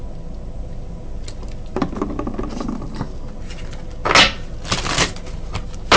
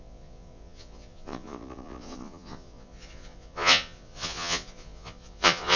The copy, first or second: second